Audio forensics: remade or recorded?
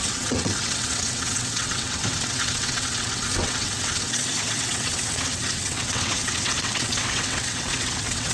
remade